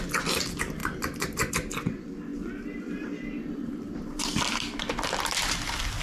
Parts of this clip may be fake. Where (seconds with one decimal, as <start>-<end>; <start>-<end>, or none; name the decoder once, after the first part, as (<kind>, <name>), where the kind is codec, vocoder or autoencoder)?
0.0-0.8 (vocoder, BigVGAN v2); 1.5-6.0

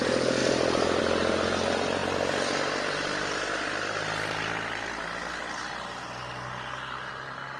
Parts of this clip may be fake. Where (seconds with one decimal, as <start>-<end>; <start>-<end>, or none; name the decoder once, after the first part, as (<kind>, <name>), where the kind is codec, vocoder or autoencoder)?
none

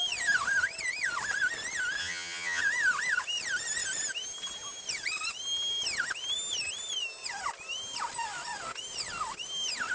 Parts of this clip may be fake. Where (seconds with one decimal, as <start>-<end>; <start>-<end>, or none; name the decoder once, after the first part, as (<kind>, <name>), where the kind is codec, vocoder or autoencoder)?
2.0-2.6 (vocoder, HiFi-GAN)

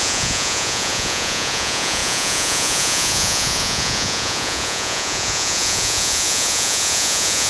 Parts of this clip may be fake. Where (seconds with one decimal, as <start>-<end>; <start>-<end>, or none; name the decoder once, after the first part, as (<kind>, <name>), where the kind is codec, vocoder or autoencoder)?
0.0-7.5 (vocoder, Vocos)

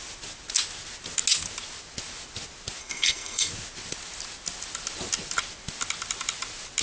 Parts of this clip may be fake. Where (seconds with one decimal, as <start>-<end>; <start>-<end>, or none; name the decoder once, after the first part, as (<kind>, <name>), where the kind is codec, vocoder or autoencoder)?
2.8-3.5 (codec, SNAC)

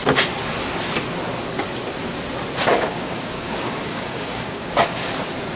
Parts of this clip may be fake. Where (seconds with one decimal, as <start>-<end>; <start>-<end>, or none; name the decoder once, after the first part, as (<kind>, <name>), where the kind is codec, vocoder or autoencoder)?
2.7-5.1 (codec, DAC)

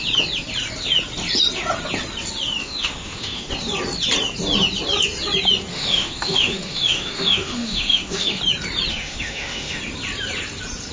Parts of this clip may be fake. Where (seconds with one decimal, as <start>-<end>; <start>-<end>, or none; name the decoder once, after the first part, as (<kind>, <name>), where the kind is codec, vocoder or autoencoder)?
2.6-3.5 (autoencoder, DAC-VAE); 5.7-8.4; 8.9-9.8